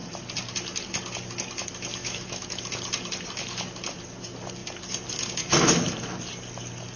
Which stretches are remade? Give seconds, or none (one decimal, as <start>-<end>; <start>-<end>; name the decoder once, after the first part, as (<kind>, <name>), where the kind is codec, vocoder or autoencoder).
2.0-2.6 (autoencoder, DAC-VAE)